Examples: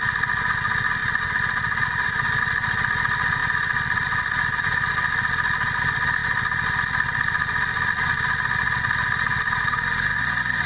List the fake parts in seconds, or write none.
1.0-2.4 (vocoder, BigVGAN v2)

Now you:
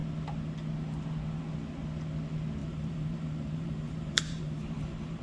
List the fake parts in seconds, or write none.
2.6-5.2 (vocoder, BigVGAN v2)

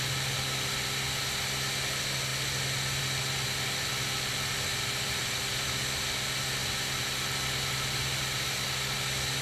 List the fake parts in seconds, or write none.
none

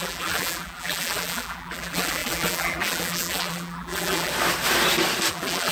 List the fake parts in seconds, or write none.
0.0-4.3 (vocoder, BigVGAN v2); 5.3-5.7

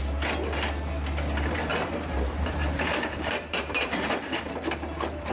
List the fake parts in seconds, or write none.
1.7-5.3 (vocoder, BigVGAN v2)